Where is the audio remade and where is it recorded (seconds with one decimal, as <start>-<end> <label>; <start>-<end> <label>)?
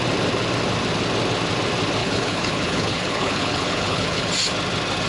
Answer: 0.0-2.0 recorded; 2.0-4.3 remade; 4.3-5.1 recorded